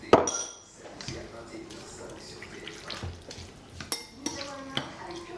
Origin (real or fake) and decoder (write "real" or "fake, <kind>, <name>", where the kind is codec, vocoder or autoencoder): real